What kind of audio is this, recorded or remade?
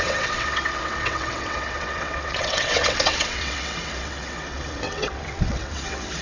remade